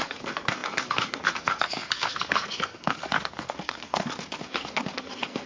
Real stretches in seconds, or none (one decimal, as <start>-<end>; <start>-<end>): none